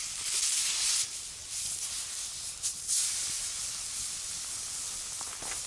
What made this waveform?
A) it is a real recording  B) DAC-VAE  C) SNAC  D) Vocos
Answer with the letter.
A